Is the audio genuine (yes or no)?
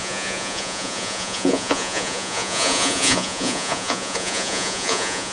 no